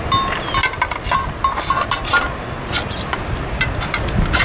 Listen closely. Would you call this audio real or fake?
real